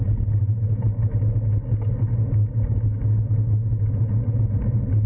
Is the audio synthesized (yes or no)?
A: no